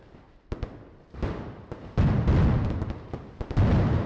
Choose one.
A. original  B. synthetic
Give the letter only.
A